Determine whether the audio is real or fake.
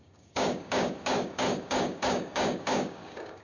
fake